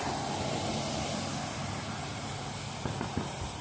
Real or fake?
real